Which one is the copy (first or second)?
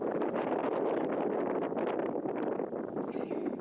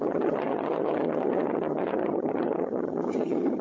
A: second